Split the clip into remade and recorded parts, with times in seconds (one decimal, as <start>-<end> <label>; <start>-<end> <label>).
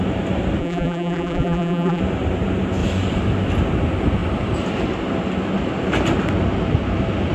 0.0-0.6 recorded; 0.6-2.0 remade; 2.0-7.3 recorded